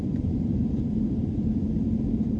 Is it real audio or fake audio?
fake